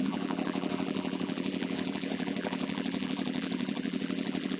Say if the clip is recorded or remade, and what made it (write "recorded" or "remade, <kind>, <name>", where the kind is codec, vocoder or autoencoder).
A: remade, vocoder, BigVGAN v2